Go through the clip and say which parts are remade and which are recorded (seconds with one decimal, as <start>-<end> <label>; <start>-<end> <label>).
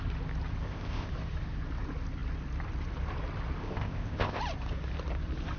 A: 0.0-0.6 recorded; 0.6-1.1 remade; 1.1-3.6 recorded; 3.6-4.4 remade; 4.4-5.6 recorded